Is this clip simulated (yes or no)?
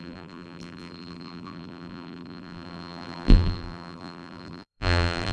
yes